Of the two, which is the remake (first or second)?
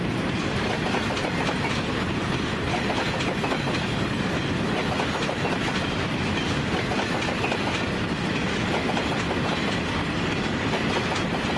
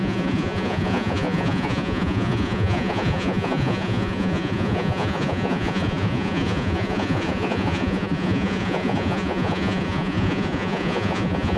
second